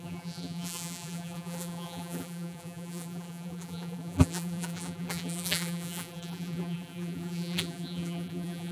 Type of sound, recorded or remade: remade